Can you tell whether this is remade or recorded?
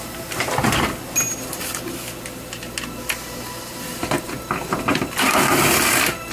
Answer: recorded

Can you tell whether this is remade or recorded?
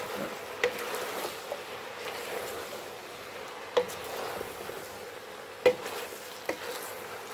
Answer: recorded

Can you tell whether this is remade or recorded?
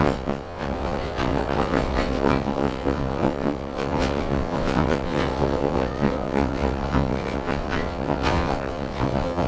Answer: remade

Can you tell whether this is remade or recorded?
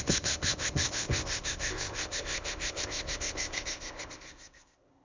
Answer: remade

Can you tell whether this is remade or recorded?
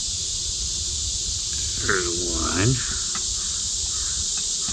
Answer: recorded